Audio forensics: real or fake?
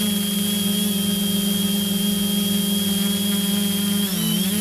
real